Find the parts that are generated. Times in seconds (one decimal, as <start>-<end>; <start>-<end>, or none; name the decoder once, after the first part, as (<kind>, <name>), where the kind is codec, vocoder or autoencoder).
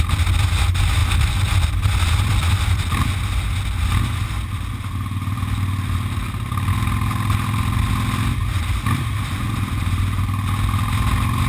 1.0-1.7 (vocoder, BigVGAN v2); 8.4-10.0